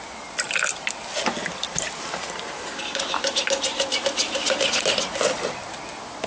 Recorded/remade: recorded